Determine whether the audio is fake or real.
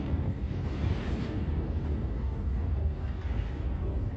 fake